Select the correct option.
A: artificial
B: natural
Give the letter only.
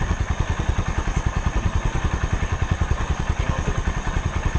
A